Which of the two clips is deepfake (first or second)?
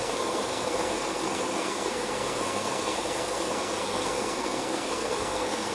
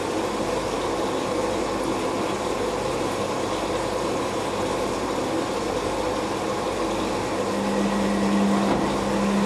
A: first